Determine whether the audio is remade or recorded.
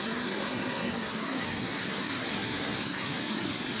remade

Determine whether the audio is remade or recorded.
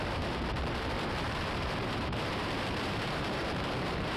remade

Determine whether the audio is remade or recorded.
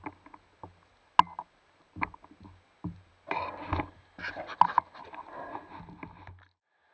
recorded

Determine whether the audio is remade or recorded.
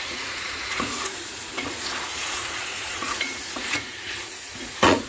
remade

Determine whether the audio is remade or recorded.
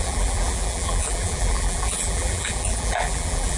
remade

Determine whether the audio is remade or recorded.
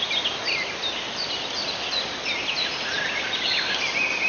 recorded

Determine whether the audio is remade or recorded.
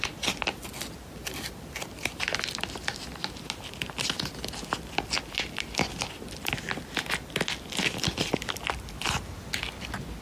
recorded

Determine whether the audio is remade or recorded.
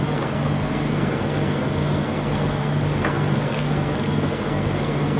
remade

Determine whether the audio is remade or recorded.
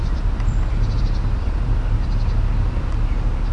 remade